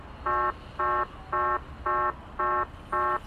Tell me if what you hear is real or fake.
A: real